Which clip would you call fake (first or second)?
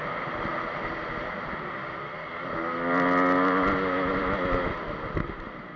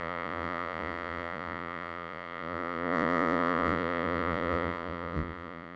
second